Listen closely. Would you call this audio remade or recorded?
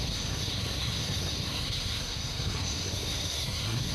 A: remade